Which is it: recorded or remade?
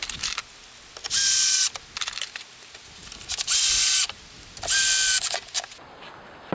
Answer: recorded